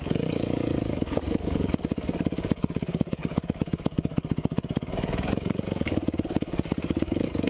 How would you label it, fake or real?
fake